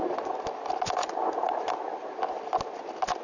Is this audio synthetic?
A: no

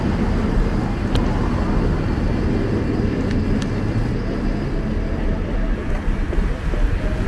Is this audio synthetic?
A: no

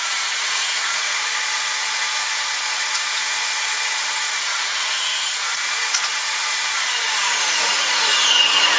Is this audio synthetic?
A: yes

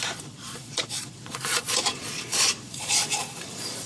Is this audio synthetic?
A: yes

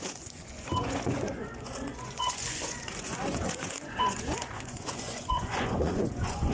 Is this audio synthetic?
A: yes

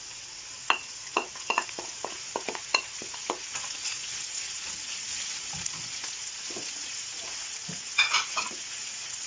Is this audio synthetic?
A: yes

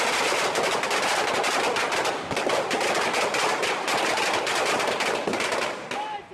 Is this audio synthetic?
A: no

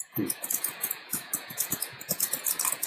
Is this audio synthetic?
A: yes